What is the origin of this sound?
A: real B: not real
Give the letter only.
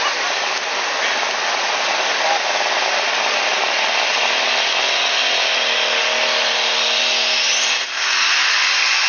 A